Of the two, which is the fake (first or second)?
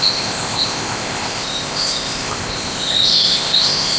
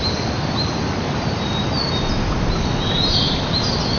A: first